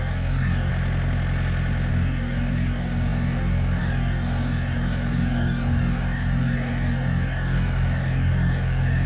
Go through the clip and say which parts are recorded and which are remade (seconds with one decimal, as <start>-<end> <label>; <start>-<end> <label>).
0.0-0.7 remade; 0.7-1.9 recorded; 1.9-9.1 remade